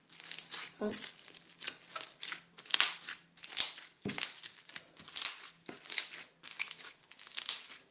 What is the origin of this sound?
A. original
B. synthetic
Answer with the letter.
A